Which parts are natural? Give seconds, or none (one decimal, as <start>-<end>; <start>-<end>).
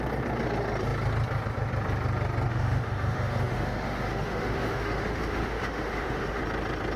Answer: 0.0-2.5; 6.4-7.0